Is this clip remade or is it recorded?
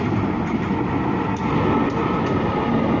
recorded